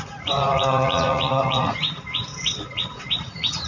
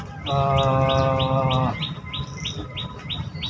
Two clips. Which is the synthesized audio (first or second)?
first